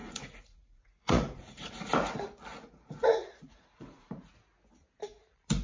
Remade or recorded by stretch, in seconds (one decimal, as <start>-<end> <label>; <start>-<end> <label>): 0.0-1.7 remade; 1.7-2.5 recorded; 2.5-4.3 remade; 4.3-5.6 recorded